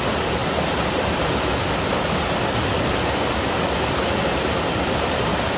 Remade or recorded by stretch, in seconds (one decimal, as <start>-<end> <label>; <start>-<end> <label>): 0.0-5.6 recorded